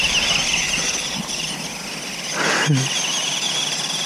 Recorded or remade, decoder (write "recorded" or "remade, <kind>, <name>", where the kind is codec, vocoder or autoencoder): recorded